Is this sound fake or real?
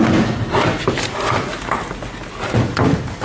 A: real